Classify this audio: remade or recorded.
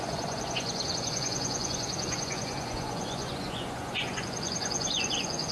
remade